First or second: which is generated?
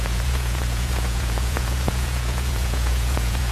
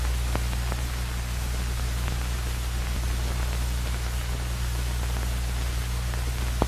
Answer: first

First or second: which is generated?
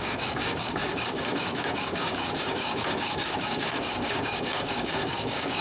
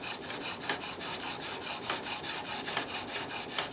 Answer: first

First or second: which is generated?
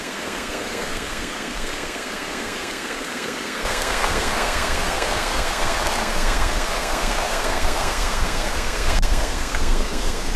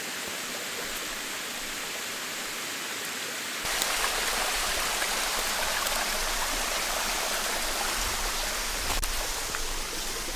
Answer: first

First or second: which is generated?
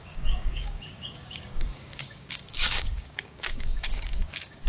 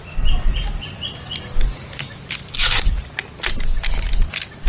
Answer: first